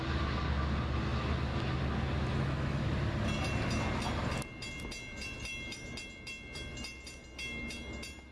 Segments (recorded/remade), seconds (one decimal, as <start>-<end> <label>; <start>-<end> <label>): 0.0-2.3 recorded; 2.3-2.8 remade; 2.8-8.3 recorded